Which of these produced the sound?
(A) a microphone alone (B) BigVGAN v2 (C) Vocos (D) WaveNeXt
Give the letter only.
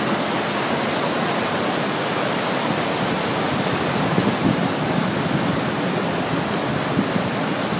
A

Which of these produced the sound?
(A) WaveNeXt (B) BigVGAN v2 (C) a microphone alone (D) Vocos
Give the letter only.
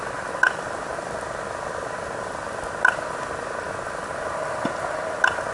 C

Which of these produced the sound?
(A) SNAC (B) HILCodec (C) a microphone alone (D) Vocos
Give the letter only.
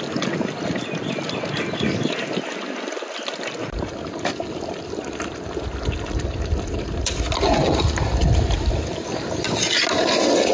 C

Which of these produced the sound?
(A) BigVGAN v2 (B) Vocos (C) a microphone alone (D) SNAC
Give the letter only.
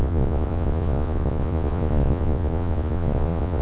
B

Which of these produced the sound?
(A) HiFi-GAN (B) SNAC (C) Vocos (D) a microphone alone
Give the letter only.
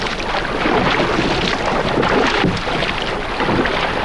D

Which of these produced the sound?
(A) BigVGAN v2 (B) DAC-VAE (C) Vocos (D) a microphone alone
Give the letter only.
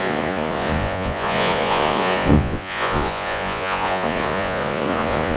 C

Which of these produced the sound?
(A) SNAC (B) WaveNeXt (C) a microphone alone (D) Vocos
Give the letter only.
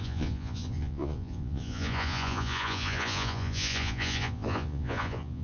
D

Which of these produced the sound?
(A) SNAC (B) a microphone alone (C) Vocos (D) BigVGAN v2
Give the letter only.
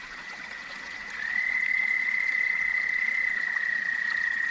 C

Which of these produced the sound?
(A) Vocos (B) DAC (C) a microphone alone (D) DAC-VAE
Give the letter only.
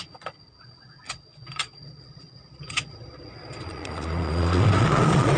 A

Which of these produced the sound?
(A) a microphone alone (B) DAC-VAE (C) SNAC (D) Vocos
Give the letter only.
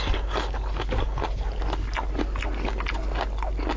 A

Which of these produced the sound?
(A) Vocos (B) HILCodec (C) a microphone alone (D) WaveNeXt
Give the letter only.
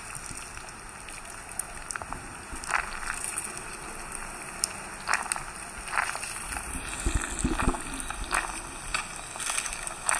C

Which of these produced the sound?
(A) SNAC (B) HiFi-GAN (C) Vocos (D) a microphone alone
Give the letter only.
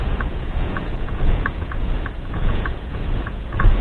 C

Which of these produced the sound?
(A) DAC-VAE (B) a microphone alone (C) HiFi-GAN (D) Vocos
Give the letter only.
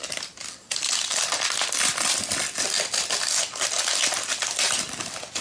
B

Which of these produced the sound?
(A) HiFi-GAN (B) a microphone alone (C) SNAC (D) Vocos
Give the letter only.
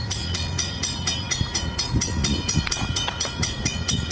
D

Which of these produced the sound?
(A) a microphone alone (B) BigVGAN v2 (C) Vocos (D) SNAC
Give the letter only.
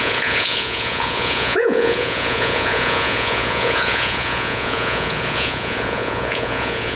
C